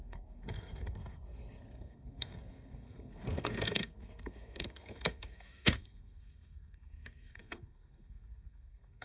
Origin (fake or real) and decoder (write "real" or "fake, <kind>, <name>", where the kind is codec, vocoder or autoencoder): fake, codec, SNAC